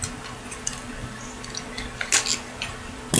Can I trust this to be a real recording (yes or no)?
yes